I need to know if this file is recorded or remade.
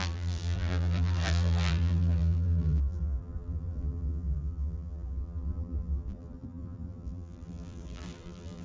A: remade